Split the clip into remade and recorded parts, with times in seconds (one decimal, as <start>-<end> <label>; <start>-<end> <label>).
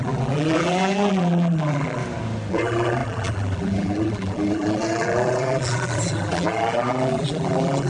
0.0-2.0 remade; 2.0-2.5 recorded; 2.5-7.9 remade